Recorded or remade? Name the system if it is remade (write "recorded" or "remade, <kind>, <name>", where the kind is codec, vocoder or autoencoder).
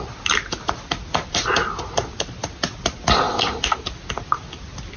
recorded